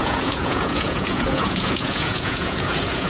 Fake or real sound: fake